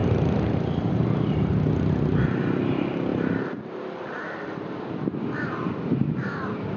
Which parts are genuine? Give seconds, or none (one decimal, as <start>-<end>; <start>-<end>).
0.9-3.1